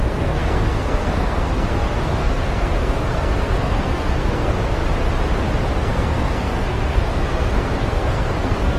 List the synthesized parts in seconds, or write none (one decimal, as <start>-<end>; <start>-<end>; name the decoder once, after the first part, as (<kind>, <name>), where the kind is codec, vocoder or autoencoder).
0.0-4.8 (codec, SNAC); 5.7-8.8